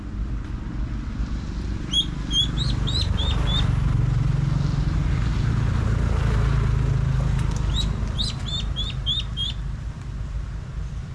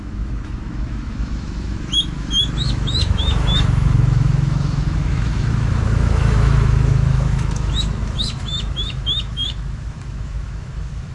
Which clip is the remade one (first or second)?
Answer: second